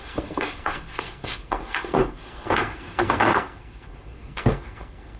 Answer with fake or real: fake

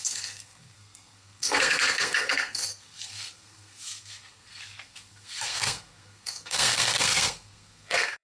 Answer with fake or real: fake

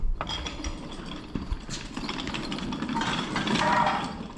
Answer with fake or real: real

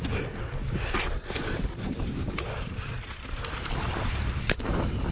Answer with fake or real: real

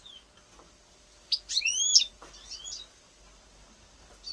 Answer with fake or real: real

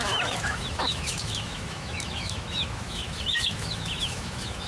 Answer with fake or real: fake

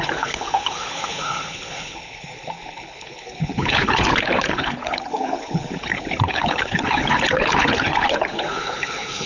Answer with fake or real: fake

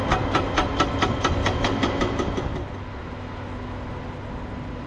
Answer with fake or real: real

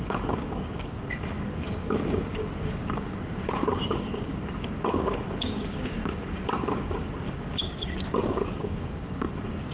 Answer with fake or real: fake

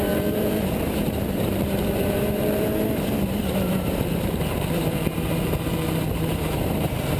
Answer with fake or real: fake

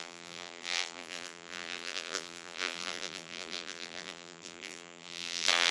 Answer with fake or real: fake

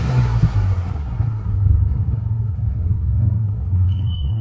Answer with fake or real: fake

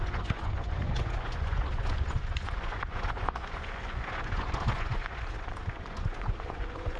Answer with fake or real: fake